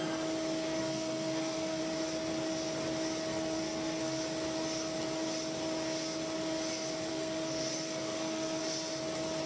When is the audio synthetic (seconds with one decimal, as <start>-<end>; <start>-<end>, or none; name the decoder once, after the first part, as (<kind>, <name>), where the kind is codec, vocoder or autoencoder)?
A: 0.8-1.8 (codec, SNAC); 3.3-4.2; 7.1-8.6